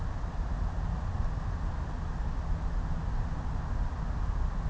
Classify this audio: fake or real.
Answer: real